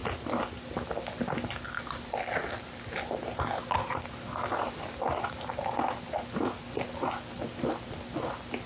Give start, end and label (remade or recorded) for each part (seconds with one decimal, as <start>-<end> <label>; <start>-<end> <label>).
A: 0.0-8.7 recorded